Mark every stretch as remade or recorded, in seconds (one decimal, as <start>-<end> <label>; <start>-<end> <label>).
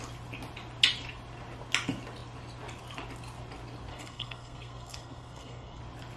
0.0-3.9 recorded; 3.9-5.8 remade; 5.8-6.2 recorded